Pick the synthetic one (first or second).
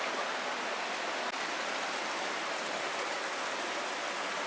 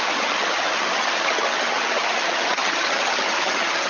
second